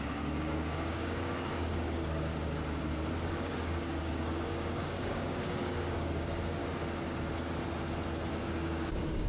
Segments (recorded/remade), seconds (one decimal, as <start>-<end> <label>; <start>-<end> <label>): 0.0-2.3 remade; 2.3-3.3 recorded; 3.3-6.6 remade; 6.6-8.3 recorded; 8.3-9.3 remade